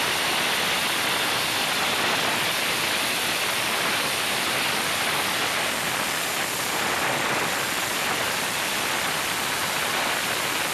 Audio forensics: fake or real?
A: real